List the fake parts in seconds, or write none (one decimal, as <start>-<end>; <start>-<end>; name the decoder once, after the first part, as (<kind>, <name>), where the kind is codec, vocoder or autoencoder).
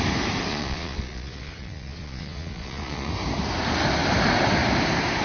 0.5-3.1 (vocoder, Vocos)